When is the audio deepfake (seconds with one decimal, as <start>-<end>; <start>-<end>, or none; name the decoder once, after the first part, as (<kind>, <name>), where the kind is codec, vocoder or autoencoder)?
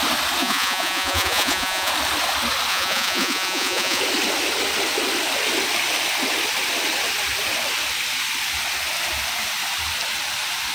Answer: 0.4-1.9 (vocoder, Vocos); 2.7-4.0